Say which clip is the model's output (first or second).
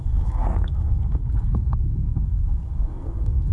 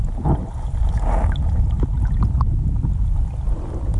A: first